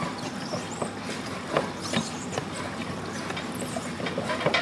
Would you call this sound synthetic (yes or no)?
no